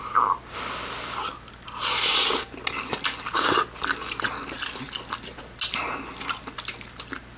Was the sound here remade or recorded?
recorded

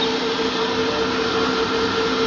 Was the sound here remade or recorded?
recorded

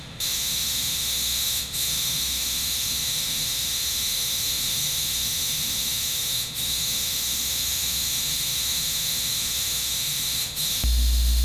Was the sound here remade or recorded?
remade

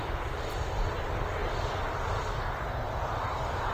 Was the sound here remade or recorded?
recorded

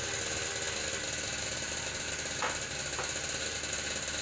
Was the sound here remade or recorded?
recorded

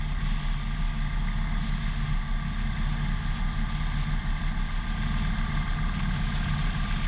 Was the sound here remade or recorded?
recorded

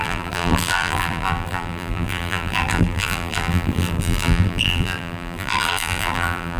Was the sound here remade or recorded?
remade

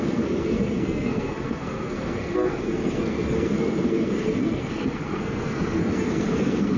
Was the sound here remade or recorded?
remade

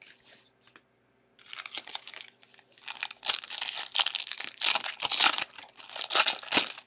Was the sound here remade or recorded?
recorded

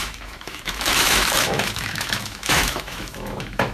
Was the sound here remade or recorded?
remade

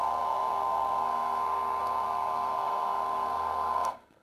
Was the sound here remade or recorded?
remade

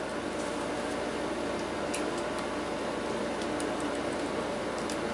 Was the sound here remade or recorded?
recorded